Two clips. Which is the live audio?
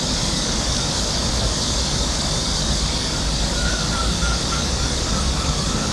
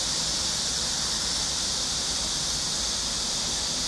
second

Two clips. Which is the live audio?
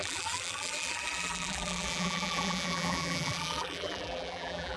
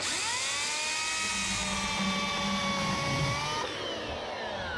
second